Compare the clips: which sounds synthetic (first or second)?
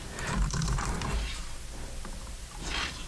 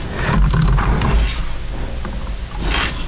first